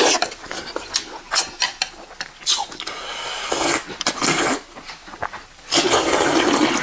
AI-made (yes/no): no